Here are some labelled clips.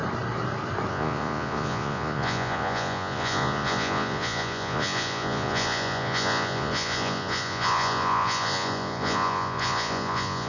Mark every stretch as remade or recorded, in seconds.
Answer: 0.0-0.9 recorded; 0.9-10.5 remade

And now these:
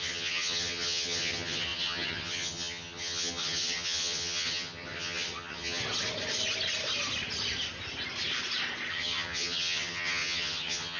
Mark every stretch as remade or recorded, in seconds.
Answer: 0.0-5.8 remade; 5.8-8.9 recorded; 8.9-11.0 remade

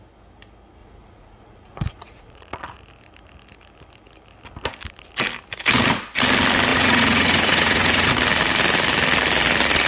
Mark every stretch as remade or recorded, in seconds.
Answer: 0.0-0.8 recorded; 0.8-2.8 remade; 2.8-6.7 recorded; 6.7-8.1 remade; 8.1-9.9 recorded

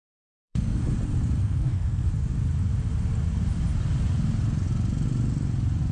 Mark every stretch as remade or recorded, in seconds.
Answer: 0.0-0.8 remade; 0.8-1.4 recorded; 1.4-2.1 remade; 2.1-5.9 recorded

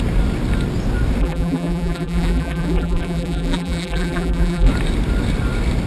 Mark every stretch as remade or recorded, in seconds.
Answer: 0.0-1.2 recorded; 1.2-4.7 remade; 4.7-5.9 recorded

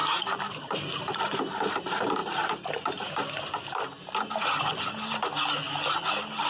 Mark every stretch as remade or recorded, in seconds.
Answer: 0.0-1.2 remade; 1.2-6.5 recorded

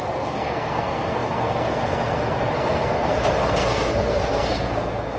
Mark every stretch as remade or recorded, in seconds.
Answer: 0.0-5.2 remade